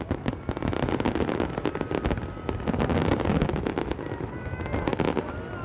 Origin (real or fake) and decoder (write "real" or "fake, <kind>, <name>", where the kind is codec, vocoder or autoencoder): real